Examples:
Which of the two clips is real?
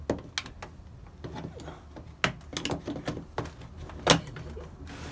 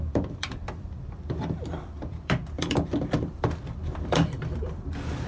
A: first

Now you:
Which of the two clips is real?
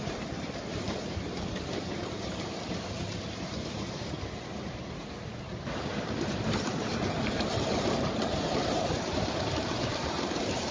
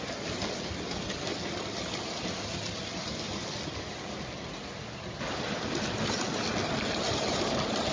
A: second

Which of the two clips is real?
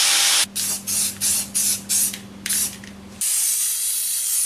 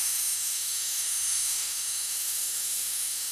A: first